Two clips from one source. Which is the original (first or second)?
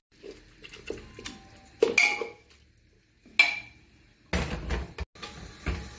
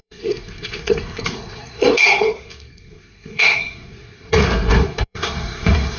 first